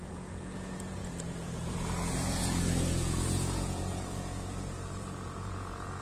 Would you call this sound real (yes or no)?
no